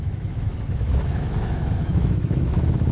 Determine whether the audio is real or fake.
fake